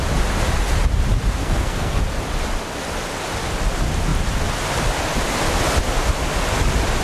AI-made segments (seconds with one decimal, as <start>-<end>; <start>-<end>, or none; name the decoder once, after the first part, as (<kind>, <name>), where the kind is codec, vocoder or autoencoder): 1.4-2.0 (codec, SNAC)